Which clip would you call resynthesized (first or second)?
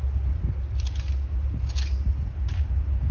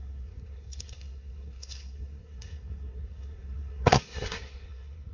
second